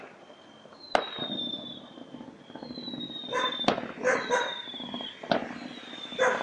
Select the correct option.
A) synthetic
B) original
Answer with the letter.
B